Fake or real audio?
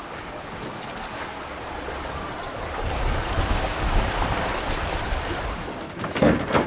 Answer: real